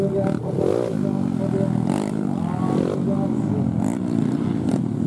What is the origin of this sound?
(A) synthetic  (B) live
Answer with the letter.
B